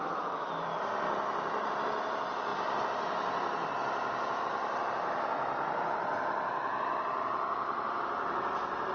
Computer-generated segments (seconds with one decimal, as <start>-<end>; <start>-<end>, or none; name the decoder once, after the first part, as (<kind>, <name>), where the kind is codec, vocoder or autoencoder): none